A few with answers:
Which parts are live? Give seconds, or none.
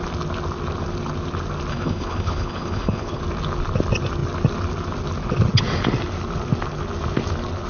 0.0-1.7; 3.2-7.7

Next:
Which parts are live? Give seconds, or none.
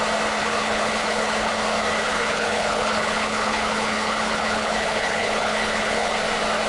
0.0-0.4; 1.5-2.1; 6.1-6.7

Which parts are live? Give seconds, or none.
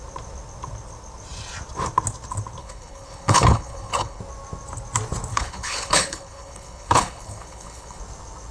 0.0-2.6; 4.2-5.3; 8.0-8.5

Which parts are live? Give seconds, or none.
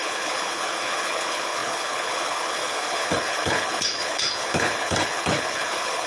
none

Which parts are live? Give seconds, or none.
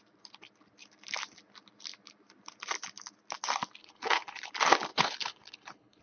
0.0-3.8; 4.5-4.9